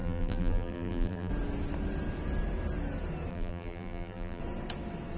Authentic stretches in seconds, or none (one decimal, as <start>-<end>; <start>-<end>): 1.3-3.3; 4.4-5.2